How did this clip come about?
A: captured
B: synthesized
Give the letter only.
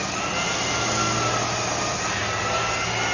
A